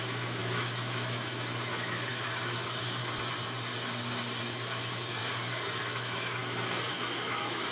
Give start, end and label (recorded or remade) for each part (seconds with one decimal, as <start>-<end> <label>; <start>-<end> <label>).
0.0-3.0 remade; 3.0-4.4 recorded; 4.4-5.2 remade; 5.2-5.8 recorded; 5.8-6.4 remade; 6.4-6.9 recorded; 6.9-7.7 remade

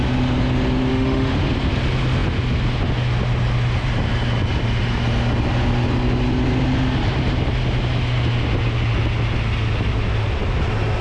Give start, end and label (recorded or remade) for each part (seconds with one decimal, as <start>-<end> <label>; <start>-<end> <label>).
0.0-0.9 recorded; 0.9-1.5 remade; 1.5-11.0 recorded

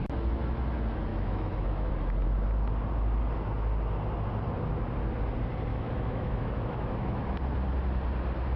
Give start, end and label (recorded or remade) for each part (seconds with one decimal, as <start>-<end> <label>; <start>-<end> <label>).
0.0-1.1 recorded; 1.1-1.9 remade; 1.9-5.7 recorded; 5.7-7.2 remade; 7.2-8.6 recorded

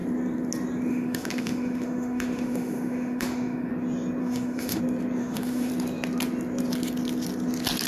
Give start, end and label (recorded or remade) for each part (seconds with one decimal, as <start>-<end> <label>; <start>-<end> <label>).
0.0-0.9 recorded; 0.9-3.7 remade; 3.7-4.2 recorded; 4.2-4.8 remade; 4.8-5.2 recorded; 5.2-5.7 remade; 5.7-7.9 recorded

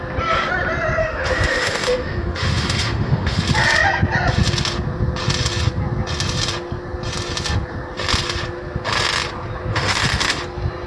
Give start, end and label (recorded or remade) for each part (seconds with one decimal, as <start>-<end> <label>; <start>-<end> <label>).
0.0-1.0 recorded; 1.0-3.4 remade; 3.4-9.7 recorded; 9.7-10.4 remade; 10.4-10.9 recorded

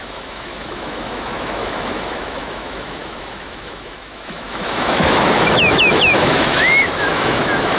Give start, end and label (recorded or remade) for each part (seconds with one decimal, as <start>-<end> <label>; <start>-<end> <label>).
0.0-7.8 remade

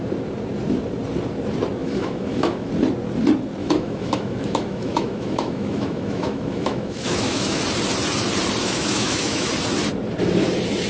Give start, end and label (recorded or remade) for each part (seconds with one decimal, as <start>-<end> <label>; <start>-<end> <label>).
0.0-1.8 recorded; 1.8-2.7 remade; 2.7-3.6 recorded; 3.6-7.6 remade; 7.6-8.6 recorded; 8.6-9.5 remade; 9.5-10.9 recorded